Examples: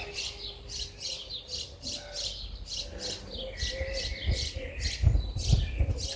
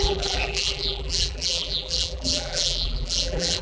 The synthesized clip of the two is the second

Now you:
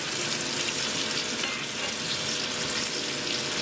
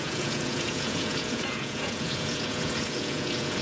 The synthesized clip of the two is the second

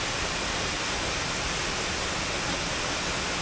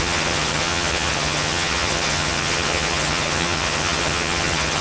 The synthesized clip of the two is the second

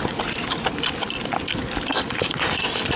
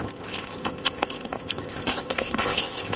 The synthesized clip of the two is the second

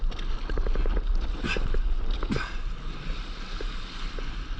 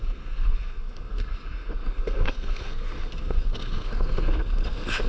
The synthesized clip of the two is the second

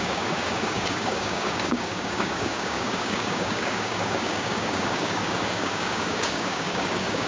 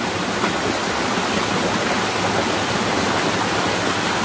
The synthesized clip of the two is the first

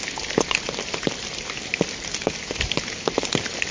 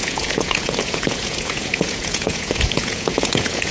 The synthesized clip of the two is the second